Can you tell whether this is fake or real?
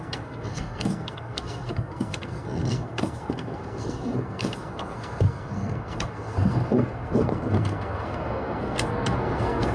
fake